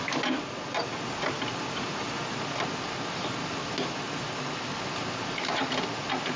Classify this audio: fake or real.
real